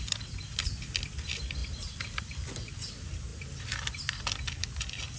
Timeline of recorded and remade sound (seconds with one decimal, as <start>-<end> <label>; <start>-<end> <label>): 0.0-5.2 recorded